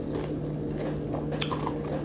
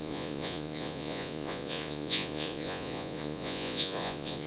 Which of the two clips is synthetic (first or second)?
second